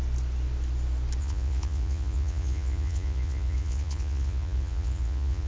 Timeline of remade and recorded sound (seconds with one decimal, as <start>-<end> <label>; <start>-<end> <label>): 0.0-1.2 recorded; 1.2-5.5 remade